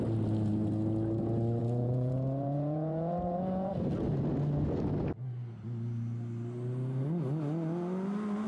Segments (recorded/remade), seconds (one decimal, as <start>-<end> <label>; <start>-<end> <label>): 0.0-1.6 recorded; 1.6-3.7 remade; 3.7-8.5 recorded